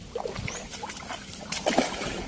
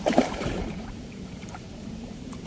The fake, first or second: second